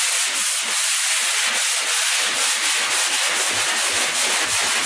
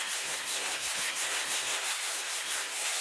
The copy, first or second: second